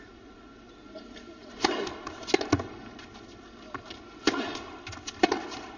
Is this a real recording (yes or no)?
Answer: yes